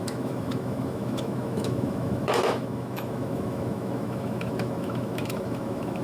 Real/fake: fake